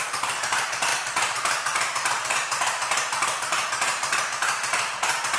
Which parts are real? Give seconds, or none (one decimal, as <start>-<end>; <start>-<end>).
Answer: none